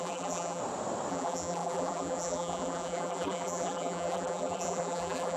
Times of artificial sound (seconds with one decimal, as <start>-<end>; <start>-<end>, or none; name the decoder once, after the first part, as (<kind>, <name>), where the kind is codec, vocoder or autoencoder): 0.0-0.6 (vocoder, BigVGAN v2); 1.1-5.4